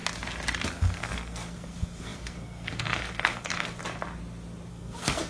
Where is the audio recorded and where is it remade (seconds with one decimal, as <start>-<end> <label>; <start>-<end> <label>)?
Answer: 0.0-0.7 recorded; 0.7-3.8 remade; 3.8-4.7 recorded; 4.7-5.3 remade